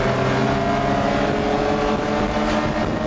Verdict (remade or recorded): recorded